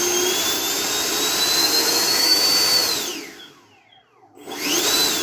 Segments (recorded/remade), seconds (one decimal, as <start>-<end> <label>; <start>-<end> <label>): 0.0-1.6 recorded; 1.6-2.4 remade; 2.4-5.2 recorded